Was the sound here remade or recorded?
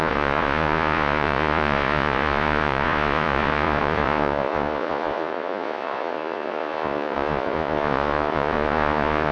remade